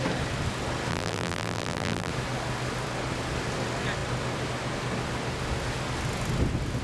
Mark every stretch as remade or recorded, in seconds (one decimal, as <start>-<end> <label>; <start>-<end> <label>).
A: 0.0-0.9 recorded; 0.9-2.1 remade; 2.1-6.8 recorded